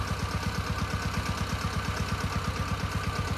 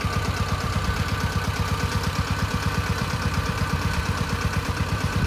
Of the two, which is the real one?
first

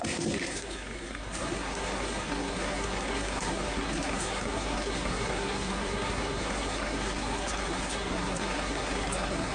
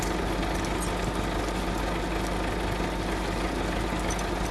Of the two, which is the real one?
second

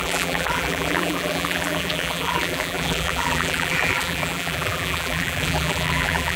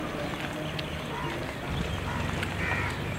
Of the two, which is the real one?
second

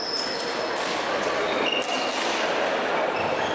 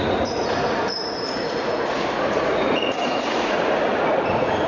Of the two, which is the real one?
first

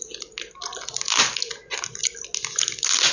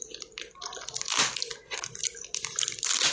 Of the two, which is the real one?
first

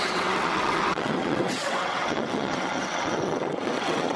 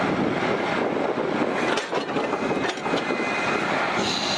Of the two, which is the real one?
second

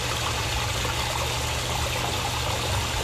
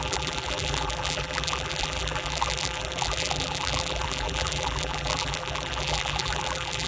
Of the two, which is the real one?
first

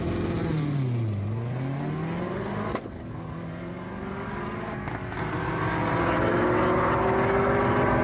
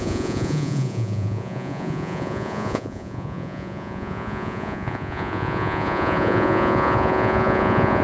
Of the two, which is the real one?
first